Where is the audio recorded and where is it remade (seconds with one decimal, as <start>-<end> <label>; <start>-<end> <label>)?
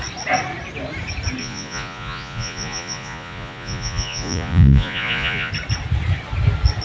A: 0.0-1.4 recorded; 1.4-5.5 remade; 5.5-6.8 recorded